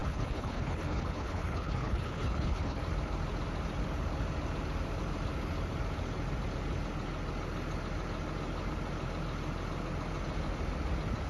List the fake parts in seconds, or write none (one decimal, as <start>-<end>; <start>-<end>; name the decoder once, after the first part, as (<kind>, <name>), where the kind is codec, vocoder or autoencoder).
0.0-2.8 (codec, HILCodec)